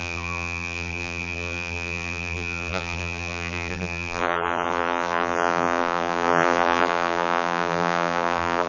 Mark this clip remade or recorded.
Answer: remade